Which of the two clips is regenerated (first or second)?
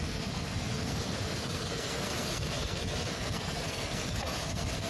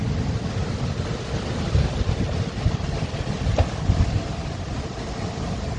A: first